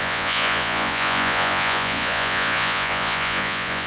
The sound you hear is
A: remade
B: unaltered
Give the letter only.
A